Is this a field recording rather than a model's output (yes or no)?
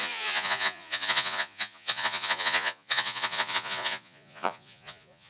no